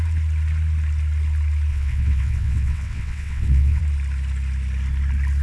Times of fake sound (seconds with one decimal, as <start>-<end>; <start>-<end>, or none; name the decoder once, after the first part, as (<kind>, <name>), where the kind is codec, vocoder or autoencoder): 1.7-3.8 (vocoder, WaveNeXt)